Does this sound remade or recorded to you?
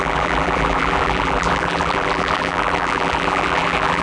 remade